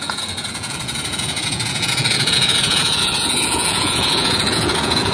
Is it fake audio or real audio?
fake